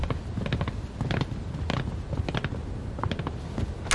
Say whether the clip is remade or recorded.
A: recorded